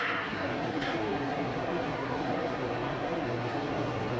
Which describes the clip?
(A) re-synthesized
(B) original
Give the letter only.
A